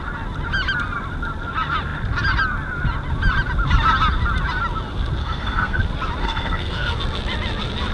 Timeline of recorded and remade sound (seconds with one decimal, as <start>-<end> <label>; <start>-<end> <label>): 0.0-5.2 recorded; 5.2-5.8 remade; 5.8-6.2 recorded; 6.2-7.0 remade; 7.0-7.9 recorded